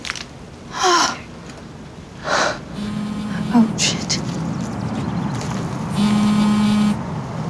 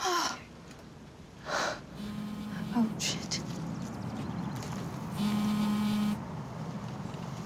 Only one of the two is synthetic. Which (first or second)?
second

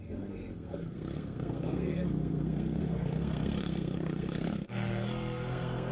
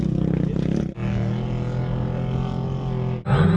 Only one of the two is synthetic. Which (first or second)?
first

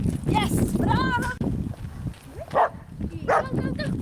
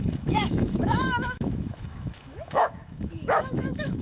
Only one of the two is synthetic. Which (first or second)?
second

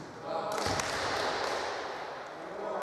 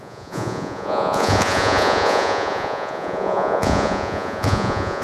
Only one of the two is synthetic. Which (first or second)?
second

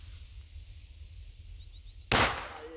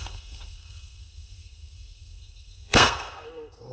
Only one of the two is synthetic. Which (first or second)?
second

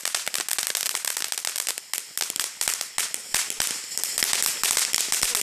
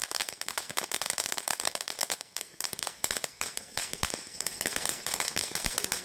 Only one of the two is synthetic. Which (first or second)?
second